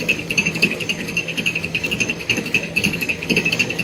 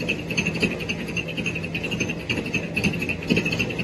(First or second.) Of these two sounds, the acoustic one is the second